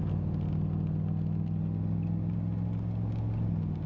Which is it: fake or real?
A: real